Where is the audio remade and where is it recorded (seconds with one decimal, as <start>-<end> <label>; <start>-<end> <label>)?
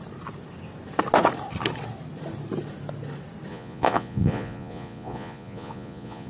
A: 0.0-3.5 recorded; 3.5-6.3 remade